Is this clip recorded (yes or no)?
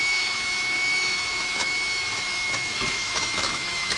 no